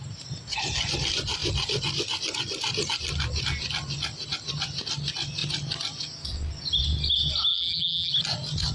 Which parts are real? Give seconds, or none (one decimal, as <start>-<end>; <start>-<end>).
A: 0.0-7.5; 8.1-8.7